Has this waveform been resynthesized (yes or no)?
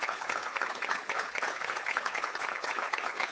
yes